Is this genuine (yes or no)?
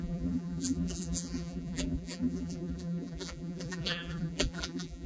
no